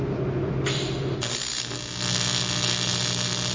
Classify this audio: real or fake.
real